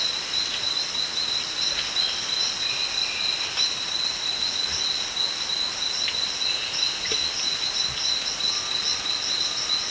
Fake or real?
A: real